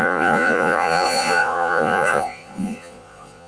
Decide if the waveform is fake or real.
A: fake